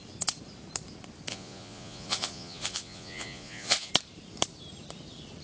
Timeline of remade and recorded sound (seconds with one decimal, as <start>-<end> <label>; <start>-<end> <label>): 0.0-1.3 recorded; 1.3-3.9 remade; 3.9-5.4 recorded